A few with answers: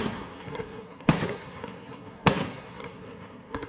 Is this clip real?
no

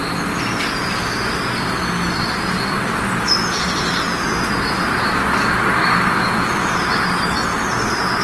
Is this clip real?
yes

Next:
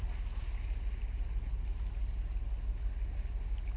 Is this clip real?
yes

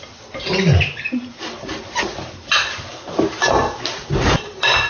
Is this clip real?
no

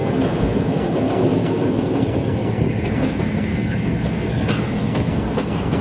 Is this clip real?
no